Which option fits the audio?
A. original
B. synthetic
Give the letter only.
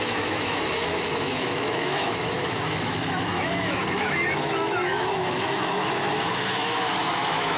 B